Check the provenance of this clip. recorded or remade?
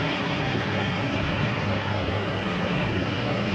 remade